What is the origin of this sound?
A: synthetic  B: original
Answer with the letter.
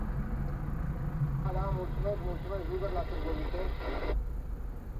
B